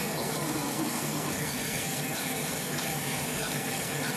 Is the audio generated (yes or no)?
yes